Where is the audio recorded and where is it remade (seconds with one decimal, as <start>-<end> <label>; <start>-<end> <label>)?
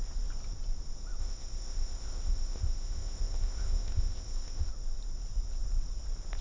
0.0-1.2 recorded; 1.2-4.7 remade; 4.7-6.4 recorded